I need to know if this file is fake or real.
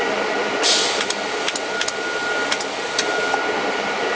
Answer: real